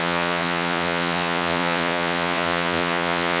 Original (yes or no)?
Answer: no